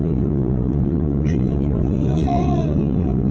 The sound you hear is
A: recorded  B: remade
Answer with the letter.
B